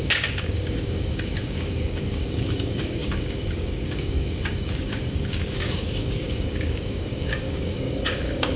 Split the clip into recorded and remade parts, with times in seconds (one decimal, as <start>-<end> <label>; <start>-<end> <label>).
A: 0.0-8.6 remade